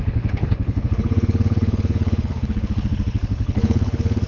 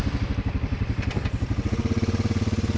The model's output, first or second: first